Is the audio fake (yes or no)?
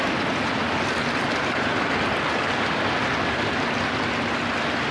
no